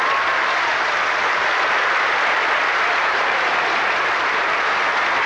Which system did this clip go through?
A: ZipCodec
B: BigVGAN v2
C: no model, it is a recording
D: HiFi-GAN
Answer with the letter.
B